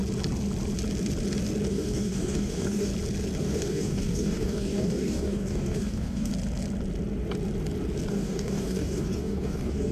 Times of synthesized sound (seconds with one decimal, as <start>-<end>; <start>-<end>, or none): 1.7-2.9; 3.4-6.3; 8.1-9.9